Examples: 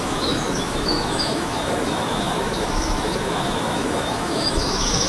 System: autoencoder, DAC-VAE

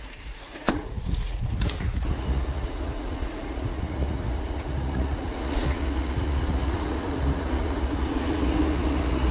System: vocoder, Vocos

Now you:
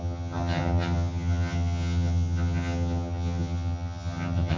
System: vocoder, HiFi-GAN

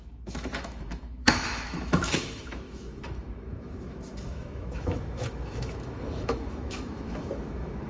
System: autoencoder, DAC-VAE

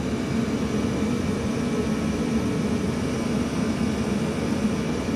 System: none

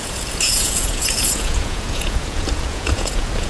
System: vocoder, Vocos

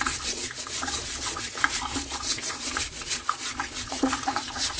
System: vocoder, Vocos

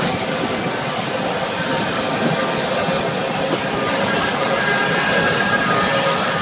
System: none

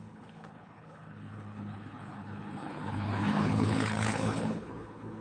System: codec, HILCodec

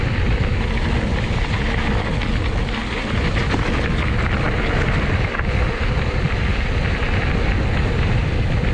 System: none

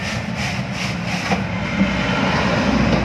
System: none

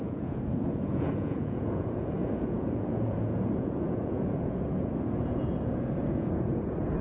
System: vocoder, Vocos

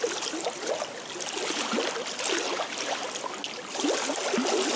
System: none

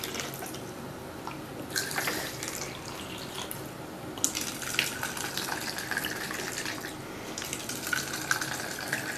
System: none